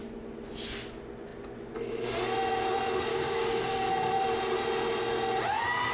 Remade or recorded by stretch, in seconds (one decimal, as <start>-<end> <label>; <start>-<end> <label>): 0.0-3.1 recorded; 3.1-3.9 remade; 3.9-5.9 recorded